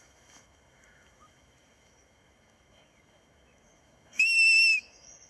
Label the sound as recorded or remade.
remade